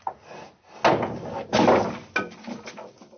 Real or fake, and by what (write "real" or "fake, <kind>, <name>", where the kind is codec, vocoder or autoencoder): real